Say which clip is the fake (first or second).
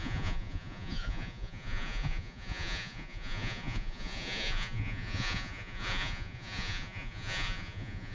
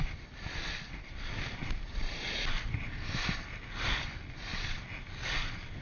first